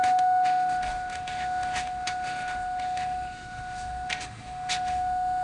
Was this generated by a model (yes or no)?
yes